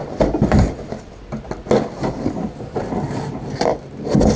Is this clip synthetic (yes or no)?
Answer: no